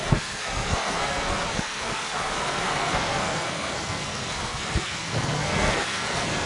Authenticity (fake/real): fake